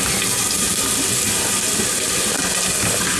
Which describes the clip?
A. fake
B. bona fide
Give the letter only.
B